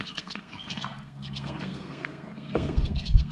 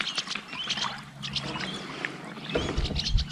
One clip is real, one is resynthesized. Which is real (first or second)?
second